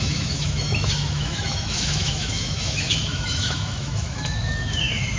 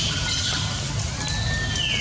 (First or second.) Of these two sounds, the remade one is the first